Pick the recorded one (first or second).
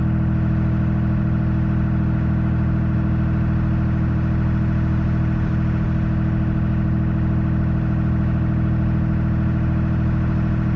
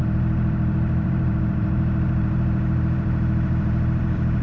first